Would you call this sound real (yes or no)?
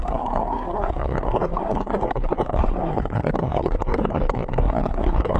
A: no